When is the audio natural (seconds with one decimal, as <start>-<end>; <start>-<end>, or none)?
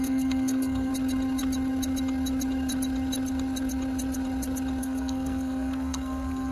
0.9-4.8